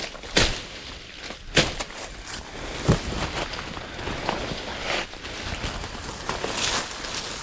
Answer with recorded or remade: recorded